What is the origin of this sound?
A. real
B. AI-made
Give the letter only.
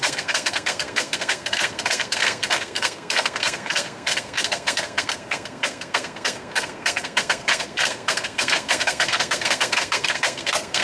B